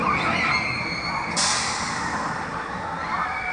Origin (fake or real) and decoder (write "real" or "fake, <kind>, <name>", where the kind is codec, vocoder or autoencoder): real